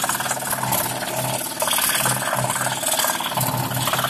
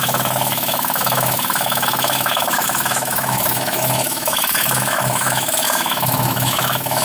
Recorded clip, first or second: first